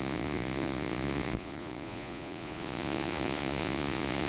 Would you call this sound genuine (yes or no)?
no